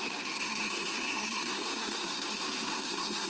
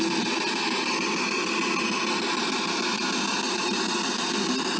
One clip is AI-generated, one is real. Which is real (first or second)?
second